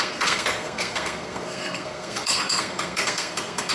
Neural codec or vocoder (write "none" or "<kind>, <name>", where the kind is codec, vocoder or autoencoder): codec, SNAC